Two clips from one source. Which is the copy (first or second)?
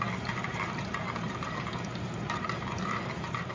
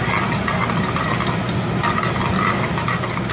first